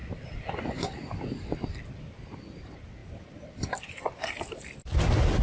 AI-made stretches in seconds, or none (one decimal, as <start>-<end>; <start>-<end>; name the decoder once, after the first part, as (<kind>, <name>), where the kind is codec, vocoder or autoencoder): 0.0-1.9 (vocoder, BigVGAN v2); 3.0-4.9